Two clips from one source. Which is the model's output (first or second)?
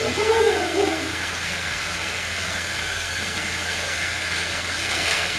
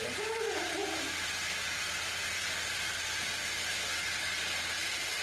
first